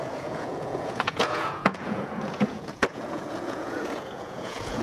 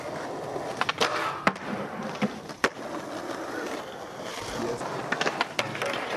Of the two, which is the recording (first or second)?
second